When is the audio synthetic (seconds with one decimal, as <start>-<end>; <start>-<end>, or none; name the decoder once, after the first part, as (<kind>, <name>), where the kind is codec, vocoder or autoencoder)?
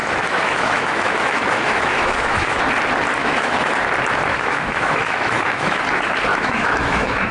0.0-2.6 (autoencoder, DAC-VAE); 3.2-3.7; 4.3-5.8; 6.3-7.3